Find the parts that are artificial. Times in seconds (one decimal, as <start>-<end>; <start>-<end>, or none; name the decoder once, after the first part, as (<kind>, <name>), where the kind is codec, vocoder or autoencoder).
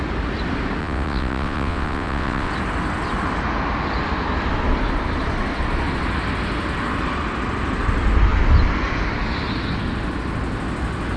0.8-2.5 (vocoder, WaveNeXt)